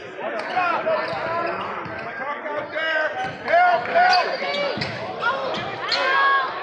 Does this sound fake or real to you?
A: real